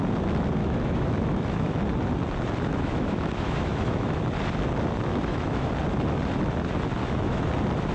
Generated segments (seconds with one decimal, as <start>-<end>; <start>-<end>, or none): 0.6-1.8; 2.7-4.2; 5.1-5.7; 7.0-7.5